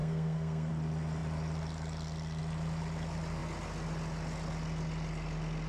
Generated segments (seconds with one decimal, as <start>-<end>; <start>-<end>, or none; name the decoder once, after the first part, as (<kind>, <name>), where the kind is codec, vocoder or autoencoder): 0.0-0.7 (codec, SNAC)